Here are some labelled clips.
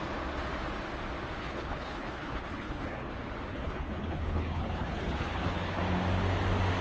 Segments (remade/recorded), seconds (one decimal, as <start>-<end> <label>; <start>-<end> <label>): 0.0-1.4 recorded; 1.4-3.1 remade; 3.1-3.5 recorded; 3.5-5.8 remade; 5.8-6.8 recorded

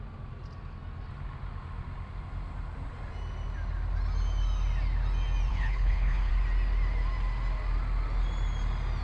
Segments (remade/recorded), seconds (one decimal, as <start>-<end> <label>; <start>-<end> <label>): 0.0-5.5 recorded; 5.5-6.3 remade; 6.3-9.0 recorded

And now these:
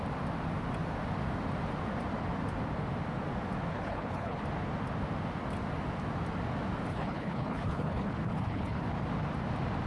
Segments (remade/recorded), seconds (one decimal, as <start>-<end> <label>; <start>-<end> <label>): 0.0-3.7 recorded; 3.7-4.4 remade; 4.4-6.9 recorded; 6.9-8.8 remade; 8.8-9.9 recorded

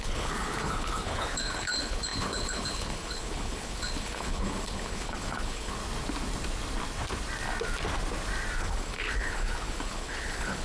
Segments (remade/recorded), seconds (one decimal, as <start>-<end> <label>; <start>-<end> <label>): 0.0-5.8 remade; 5.8-8.6 recorded; 8.6-10.6 remade